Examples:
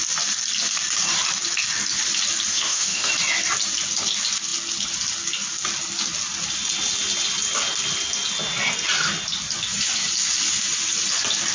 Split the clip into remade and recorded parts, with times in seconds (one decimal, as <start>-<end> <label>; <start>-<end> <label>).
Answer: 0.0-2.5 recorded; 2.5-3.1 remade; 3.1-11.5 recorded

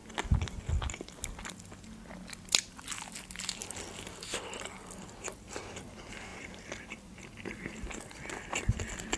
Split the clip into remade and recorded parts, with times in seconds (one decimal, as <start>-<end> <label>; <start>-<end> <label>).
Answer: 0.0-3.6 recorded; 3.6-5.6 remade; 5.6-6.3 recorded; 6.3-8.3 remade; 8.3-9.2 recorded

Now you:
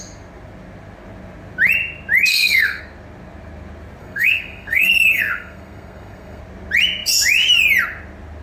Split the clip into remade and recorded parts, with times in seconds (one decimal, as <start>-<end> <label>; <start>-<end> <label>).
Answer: 0.0-2.3 recorded; 2.3-2.8 remade; 2.8-4.0 recorded; 4.0-6.4 remade; 6.4-8.4 recorded

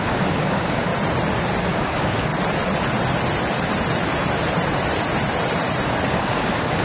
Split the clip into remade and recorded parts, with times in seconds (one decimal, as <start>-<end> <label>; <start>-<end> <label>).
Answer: 0.0-0.9 remade; 0.9-1.6 recorded; 1.6-2.3 remade; 2.3-6.1 recorded; 6.1-6.8 remade

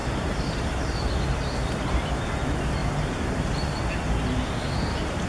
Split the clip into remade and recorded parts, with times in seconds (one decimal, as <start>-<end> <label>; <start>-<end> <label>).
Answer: 0.0-0.7 remade; 0.7-2.8 recorded; 2.8-3.8 remade; 3.8-5.3 recorded